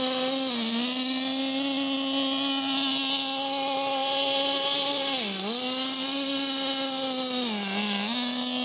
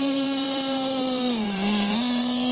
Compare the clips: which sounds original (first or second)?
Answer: first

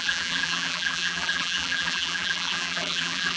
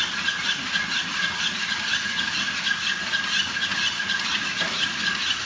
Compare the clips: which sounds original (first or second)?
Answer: second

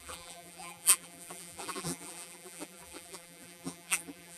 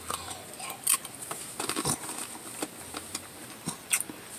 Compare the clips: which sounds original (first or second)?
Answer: second